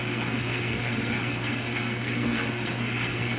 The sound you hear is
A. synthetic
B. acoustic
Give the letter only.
A